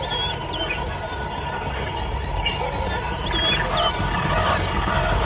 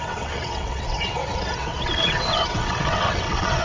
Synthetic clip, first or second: second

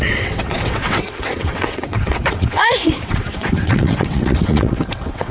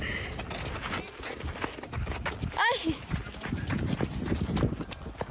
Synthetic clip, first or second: first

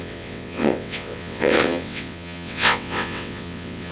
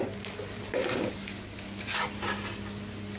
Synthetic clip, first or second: first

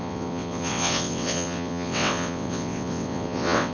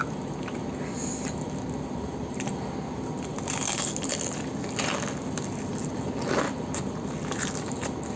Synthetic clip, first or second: first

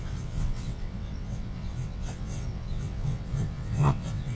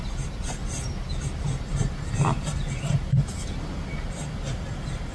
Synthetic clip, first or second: first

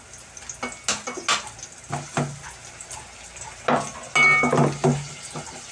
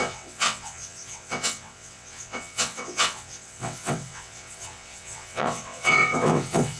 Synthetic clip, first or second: second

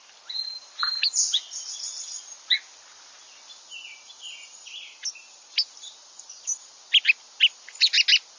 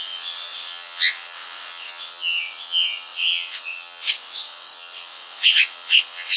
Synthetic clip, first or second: second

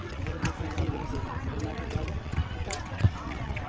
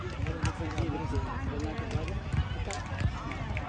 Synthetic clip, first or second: first